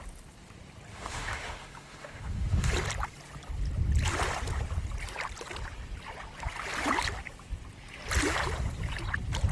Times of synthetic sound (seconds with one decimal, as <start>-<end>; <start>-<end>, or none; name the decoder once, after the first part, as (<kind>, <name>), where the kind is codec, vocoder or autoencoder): 0.9-2.7 (autoencoder, DAC-VAE)